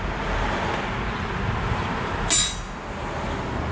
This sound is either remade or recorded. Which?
recorded